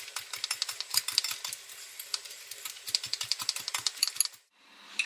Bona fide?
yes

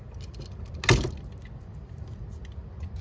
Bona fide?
yes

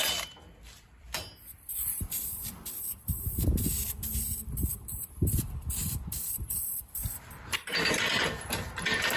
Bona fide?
no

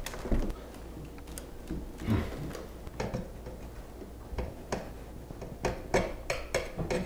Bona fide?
yes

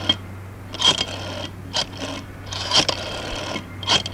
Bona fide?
yes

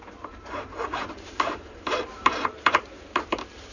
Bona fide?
no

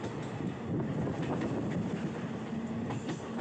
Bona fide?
yes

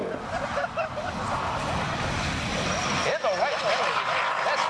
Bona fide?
yes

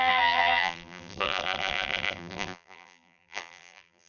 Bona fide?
no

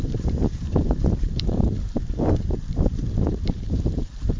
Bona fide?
no